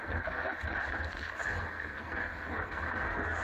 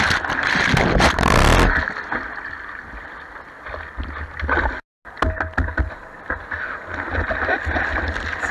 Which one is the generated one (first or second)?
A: first